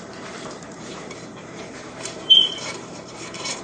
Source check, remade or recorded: remade